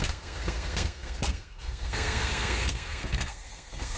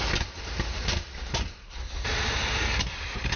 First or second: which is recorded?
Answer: second